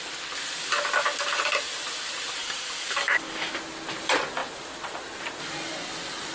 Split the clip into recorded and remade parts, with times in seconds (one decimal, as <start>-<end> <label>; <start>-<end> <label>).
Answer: 0.0-2.4 recorded; 2.4-3.5 remade; 3.5-6.3 recorded